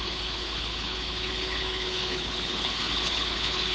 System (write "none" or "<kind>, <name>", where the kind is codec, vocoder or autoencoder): codec, HILCodec